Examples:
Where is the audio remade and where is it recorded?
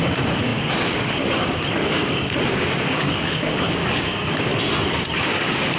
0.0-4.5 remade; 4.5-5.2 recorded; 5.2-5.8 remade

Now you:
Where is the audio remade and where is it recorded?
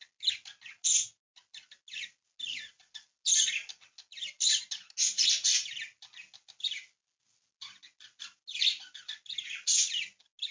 0.0-10.5 recorded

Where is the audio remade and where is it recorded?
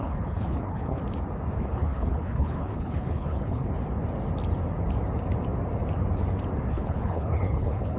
0.0-1.0 remade; 1.0-1.6 recorded; 1.6-3.7 remade; 3.7-6.7 recorded; 6.7-8.0 remade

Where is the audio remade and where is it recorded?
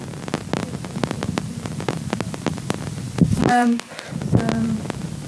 0.0-5.3 remade